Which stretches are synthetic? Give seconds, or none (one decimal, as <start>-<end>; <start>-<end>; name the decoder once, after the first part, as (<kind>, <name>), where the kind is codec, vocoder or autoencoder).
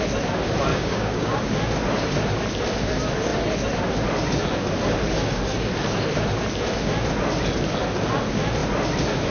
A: 0.7-1.4 (codec, DAC)